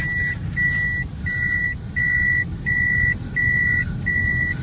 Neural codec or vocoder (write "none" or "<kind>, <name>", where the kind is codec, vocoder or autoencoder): none